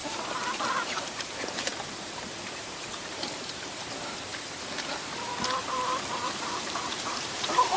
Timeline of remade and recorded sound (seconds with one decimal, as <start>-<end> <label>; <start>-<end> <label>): 0.0-4.3 remade; 4.3-5.6 recorded; 5.6-7.8 remade